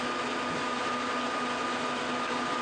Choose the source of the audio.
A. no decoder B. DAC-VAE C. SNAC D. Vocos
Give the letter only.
A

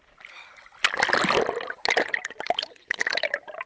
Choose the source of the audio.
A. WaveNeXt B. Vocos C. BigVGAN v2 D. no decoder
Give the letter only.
D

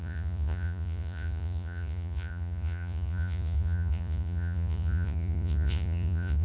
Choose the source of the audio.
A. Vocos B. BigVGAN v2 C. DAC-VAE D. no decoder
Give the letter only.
A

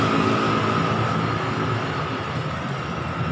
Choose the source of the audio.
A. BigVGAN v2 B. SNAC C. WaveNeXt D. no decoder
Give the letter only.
D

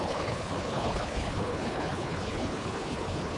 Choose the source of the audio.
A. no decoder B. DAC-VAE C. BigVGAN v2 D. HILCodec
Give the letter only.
D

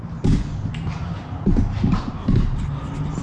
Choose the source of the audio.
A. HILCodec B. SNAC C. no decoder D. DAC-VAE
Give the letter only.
C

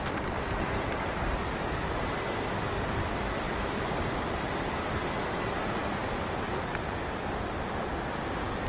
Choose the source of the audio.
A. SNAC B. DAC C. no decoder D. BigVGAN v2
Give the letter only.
C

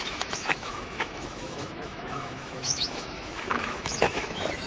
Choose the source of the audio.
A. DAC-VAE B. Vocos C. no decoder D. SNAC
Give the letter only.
A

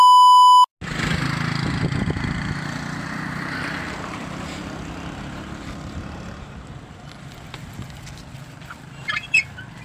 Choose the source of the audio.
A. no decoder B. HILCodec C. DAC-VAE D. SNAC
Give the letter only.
A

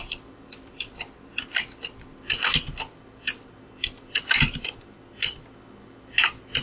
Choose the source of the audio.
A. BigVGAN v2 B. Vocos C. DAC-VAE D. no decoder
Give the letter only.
D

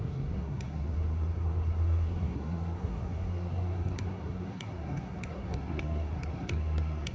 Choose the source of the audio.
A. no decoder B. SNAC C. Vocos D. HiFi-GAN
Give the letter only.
B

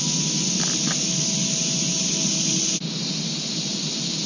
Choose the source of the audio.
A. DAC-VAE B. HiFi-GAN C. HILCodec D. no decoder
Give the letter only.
D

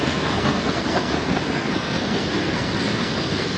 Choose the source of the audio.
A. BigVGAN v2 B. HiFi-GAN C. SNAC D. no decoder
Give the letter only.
C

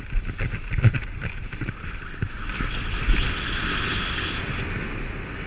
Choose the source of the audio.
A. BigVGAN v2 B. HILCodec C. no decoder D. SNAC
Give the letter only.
C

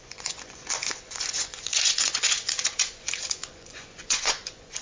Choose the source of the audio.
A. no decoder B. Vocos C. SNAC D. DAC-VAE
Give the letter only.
B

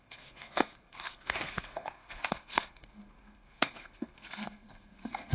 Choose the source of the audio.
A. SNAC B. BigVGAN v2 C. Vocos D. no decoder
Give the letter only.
A